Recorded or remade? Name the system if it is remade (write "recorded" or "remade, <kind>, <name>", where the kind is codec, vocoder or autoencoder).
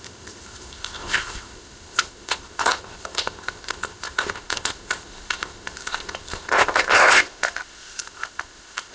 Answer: remade, codec, ZipCodec